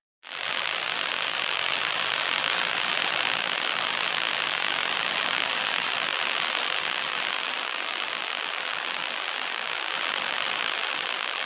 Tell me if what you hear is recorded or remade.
remade